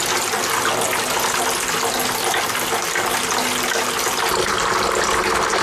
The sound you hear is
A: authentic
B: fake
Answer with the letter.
A